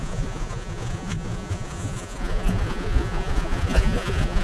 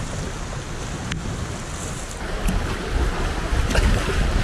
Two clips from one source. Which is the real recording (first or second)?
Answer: second